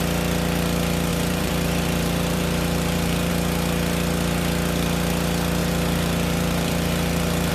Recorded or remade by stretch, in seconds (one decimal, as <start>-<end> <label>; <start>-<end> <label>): 0.0-1.1 recorded; 1.1-3.3 remade; 3.3-5.6 recorded; 5.6-7.5 remade